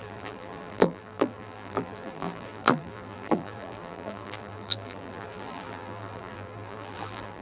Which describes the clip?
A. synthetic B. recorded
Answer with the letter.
A